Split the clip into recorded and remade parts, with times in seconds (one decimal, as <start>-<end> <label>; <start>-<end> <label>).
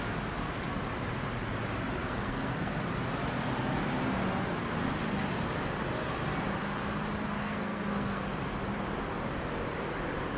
0.0-2.0 recorded; 2.0-2.8 remade; 2.8-7.4 recorded; 7.4-8.2 remade; 8.2-10.4 recorded